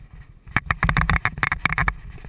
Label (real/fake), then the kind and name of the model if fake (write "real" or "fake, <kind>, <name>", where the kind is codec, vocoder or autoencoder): real